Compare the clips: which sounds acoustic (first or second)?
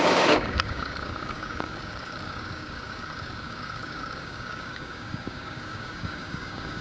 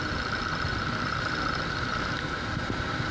second